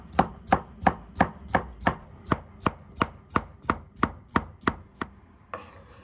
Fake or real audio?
real